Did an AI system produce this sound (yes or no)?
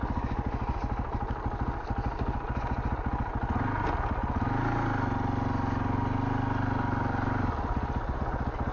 no